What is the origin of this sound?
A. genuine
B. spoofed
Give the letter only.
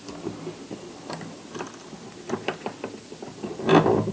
A